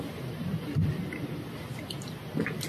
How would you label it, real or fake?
real